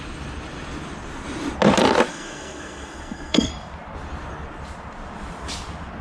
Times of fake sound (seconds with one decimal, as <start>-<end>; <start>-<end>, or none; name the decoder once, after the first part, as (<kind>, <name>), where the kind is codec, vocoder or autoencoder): 2.1-3.5 (codec, SNAC)